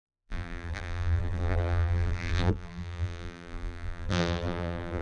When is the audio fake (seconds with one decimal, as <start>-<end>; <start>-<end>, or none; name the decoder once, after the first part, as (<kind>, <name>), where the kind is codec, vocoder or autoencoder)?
0.0-5.0 (vocoder, BigVGAN v2)